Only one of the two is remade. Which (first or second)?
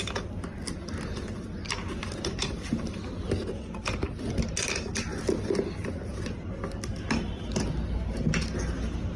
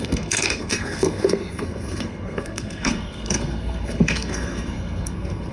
second